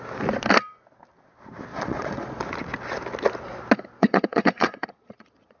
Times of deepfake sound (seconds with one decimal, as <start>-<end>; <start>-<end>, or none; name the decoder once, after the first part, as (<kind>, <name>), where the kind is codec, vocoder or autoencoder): 1.7-2.4 (vocoder, Vocos); 4.0-5.6

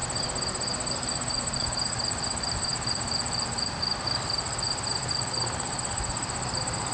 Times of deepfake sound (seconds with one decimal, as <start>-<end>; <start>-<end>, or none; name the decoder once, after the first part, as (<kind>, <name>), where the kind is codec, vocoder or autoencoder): 0.9-6.9 (vocoder, BigVGAN v2)

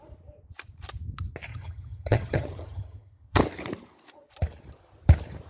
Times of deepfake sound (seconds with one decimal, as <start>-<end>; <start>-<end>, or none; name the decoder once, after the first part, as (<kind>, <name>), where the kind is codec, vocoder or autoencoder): 1.5-3.4 (vocoder, HiFi-GAN)

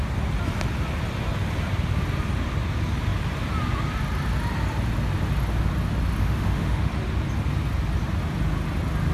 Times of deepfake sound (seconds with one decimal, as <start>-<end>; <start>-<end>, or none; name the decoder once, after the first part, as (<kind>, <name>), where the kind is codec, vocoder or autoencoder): 6.2-6.9 (autoencoder, DAC-VAE)

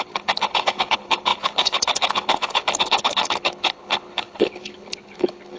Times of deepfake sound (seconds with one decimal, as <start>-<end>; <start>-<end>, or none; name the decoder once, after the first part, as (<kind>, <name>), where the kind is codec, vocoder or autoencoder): 0.0-5.6 (codec, HILCodec)